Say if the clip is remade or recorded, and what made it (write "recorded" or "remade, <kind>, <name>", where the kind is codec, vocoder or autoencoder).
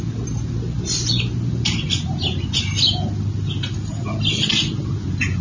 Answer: recorded